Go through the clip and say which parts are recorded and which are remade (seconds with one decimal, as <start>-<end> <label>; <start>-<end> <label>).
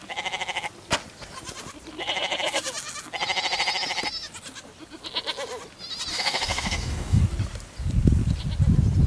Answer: 0.0-6.1 recorded; 6.1-7.2 remade; 7.2-9.1 recorded